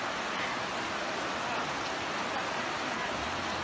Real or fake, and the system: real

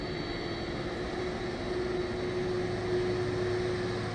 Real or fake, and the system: real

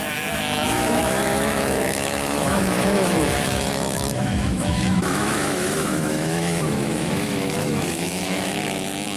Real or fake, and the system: fake, autoencoder, DAC-VAE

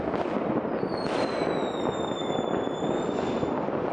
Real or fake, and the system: real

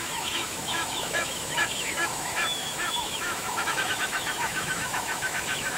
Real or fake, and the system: fake, autoencoder, DAC-VAE